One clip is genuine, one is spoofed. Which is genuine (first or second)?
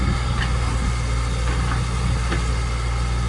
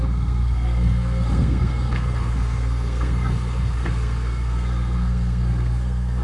first